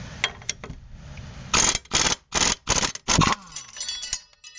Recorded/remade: recorded